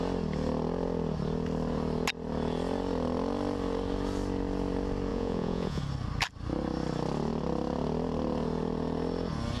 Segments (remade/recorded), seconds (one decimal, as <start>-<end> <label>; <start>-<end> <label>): 0.0-5.1 recorded; 5.1-5.8 remade; 5.8-9.6 recorded